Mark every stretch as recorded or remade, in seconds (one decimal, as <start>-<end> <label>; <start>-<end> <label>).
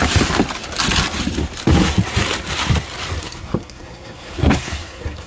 0.0-3.2 recorded; 3.2-5.3 remade